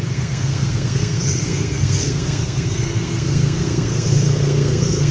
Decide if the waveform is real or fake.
fake